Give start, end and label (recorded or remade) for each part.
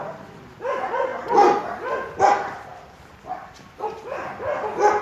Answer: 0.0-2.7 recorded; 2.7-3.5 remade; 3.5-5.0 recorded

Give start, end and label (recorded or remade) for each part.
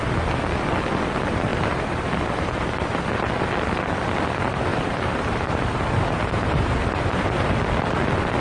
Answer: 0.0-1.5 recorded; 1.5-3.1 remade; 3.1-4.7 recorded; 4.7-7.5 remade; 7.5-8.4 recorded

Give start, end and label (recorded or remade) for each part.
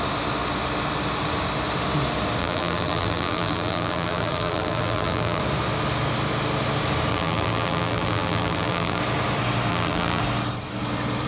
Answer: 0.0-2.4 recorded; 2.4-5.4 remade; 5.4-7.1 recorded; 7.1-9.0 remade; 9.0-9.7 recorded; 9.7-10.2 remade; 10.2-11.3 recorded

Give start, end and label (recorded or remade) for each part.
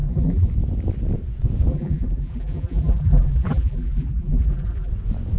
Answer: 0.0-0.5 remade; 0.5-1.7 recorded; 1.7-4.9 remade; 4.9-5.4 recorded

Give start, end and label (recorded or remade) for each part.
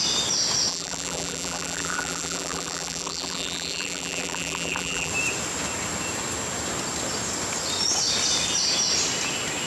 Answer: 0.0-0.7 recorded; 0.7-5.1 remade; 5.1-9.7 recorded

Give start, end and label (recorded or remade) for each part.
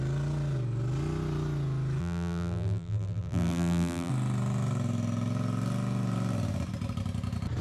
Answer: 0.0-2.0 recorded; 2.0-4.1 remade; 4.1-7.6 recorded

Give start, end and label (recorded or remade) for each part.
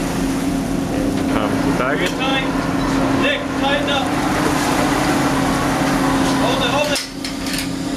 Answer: 0.0-3.7 recorded; 3.7-5.1 remade; 5.1-8.0 recorded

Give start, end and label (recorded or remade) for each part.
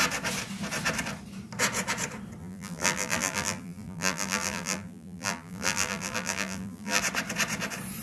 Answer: 0.0-2.4 recorded; 2.4-7.0 remade; 7.0-8.0 recorded